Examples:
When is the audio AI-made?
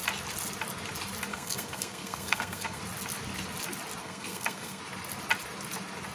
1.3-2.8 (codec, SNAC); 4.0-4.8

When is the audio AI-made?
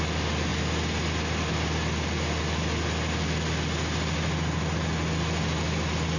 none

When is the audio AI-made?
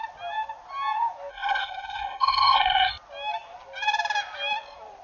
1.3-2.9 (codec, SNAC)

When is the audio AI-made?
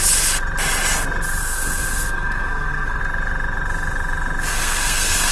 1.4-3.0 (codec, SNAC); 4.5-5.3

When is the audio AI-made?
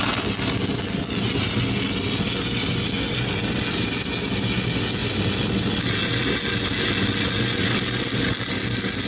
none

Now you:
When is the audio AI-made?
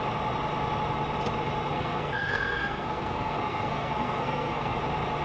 1.7-4.8 (codec, SNAC)